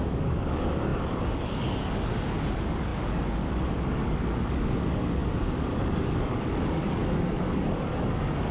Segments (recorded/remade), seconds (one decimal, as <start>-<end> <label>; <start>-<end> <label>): 0.0-8.5 remade